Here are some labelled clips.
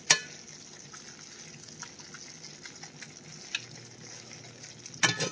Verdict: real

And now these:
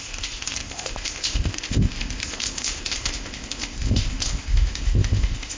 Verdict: fake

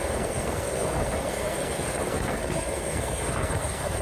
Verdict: fake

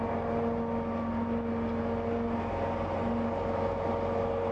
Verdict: real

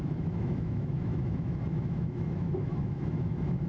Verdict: fake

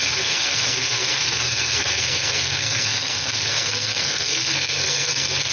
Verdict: fake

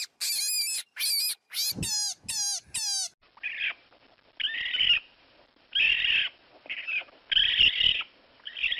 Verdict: real